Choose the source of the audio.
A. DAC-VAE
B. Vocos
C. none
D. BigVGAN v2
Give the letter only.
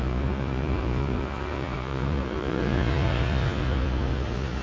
B